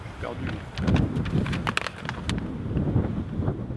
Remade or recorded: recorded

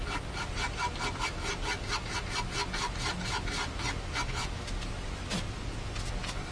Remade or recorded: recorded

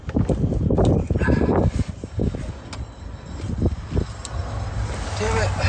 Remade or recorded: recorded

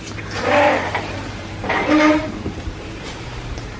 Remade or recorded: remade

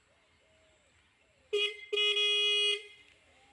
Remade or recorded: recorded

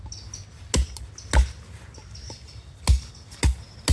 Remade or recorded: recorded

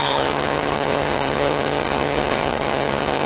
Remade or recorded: remade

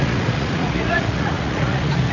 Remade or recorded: remade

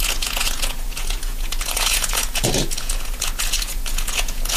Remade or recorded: remade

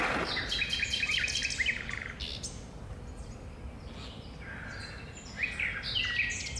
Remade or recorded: recorded